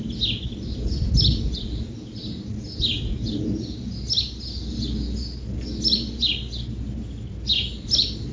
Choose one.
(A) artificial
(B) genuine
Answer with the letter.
B